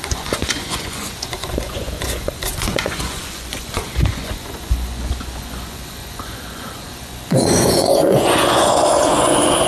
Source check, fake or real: fake